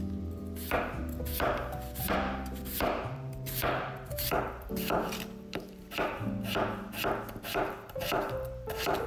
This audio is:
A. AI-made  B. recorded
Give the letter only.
A